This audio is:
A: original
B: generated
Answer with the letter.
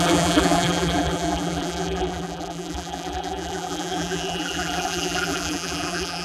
B